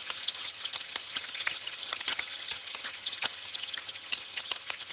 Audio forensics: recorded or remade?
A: remade